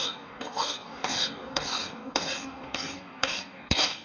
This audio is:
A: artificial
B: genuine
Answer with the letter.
A